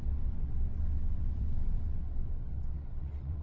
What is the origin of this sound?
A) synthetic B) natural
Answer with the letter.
A